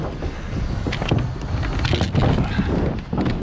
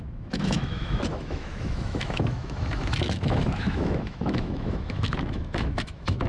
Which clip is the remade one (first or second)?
second